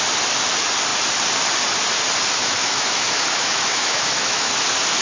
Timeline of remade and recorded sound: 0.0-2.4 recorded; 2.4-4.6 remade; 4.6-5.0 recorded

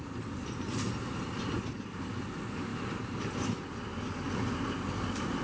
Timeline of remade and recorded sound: 0.0-5.4 recorded

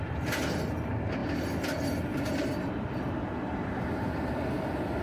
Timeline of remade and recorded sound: 0.0-5.0 recorded

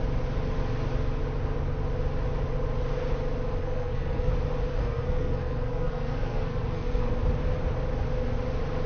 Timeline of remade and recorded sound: 0.0-3.6 recorded; 3.6-4.3 remade; 4.3-4.7 recorded; 4.7-7.2 remade; 7.2-8.9 recorded

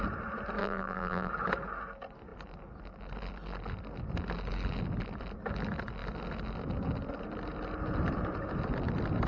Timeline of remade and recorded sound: 0.0-0.6 recorded; 0.6-1.3 remade; 1.3-9.3 recorded

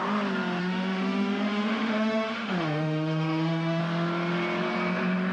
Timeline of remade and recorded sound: 0.0-0.6 recorded; 0.6-3.8 remade; 3.8-5.3 recorded